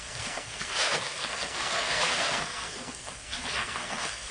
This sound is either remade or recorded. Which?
remade